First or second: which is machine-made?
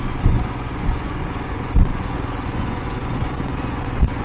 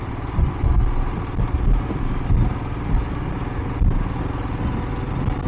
first